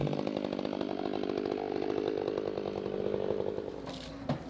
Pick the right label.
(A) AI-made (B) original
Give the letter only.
B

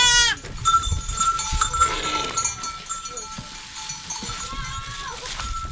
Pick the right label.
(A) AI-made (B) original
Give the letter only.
B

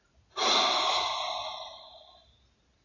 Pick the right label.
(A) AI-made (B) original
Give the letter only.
B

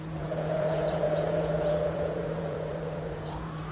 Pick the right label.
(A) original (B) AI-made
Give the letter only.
B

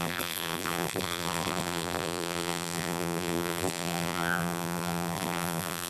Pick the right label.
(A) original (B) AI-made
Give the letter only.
B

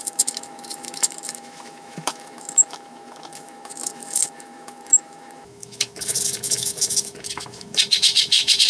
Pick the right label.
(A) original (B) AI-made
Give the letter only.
B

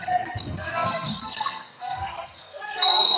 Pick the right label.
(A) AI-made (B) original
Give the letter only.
A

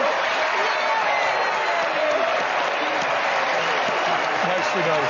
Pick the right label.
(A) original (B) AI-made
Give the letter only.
A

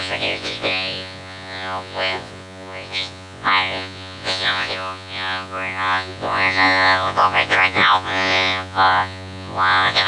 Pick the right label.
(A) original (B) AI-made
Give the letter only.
B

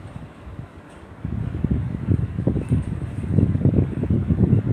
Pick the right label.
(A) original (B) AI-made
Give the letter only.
B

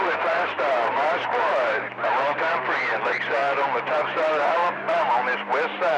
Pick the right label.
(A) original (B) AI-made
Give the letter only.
B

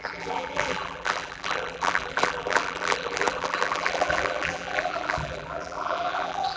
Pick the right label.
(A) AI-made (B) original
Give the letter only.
A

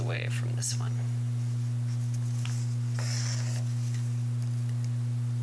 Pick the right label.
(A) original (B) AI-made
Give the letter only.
A